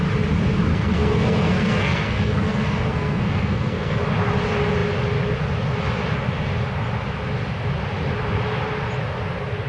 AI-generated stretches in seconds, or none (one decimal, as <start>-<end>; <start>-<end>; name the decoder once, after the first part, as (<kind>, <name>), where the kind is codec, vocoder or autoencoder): 0.7-4.0 (codec, SNAC)